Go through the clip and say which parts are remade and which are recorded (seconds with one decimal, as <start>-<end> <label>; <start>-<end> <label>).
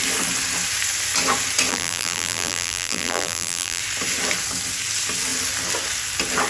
0.0-1.7 recorded; 1.7-3.8 remade; 3.8-6.5 recorded